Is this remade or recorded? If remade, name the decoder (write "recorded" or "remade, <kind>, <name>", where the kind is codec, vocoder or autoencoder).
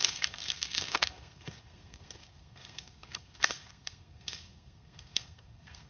remade, codec, SNAC